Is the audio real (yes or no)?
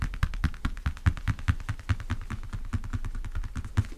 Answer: yes